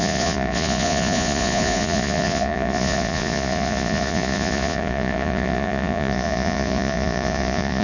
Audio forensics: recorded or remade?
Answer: remade